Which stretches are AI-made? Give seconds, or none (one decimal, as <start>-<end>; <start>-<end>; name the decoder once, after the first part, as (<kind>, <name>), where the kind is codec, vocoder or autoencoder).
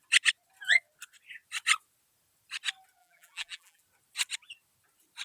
3.0-3.8 (vocoder, BigVGAN v2)